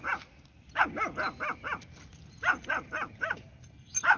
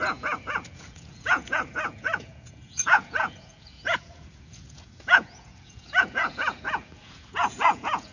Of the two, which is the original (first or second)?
first